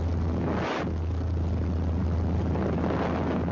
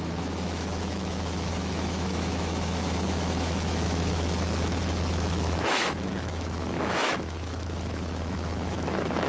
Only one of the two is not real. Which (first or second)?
second